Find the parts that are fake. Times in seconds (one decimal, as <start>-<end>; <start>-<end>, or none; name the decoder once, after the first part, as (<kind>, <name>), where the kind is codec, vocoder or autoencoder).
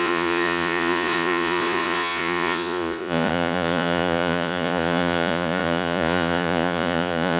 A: 0.0-7.4 (vocoder, Vocos)